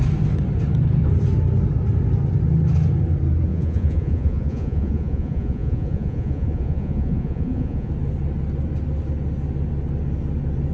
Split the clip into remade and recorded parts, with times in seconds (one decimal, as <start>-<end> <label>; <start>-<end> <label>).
0.0-3.5 recorded; 3.5-7.9 remade; 7.9-10.7 recorded